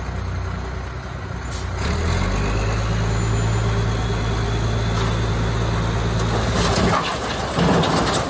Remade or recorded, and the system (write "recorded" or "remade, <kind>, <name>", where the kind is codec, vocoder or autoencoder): recorded